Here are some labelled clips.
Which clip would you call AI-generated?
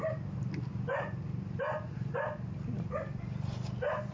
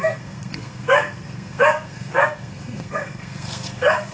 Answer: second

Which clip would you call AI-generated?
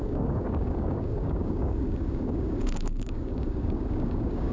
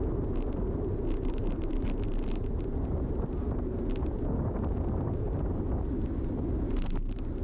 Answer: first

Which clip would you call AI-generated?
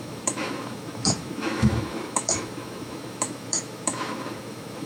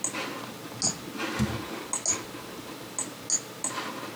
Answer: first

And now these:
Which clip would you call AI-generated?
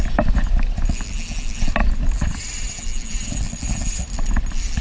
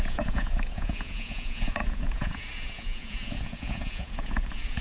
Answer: second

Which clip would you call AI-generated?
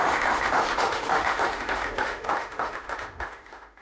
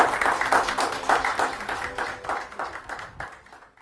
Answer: first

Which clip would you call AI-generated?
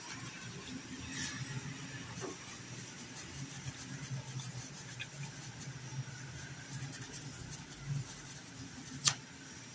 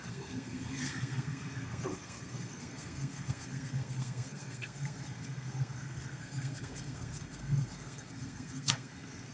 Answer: second